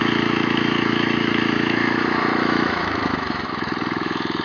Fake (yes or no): yes